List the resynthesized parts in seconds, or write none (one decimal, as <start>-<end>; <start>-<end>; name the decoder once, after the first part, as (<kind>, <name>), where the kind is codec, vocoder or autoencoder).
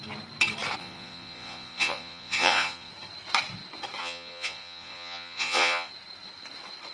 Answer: 0.8-2.9 (vocoder, Vocos); 4.0-5.9